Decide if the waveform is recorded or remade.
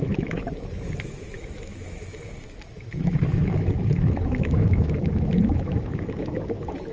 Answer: remade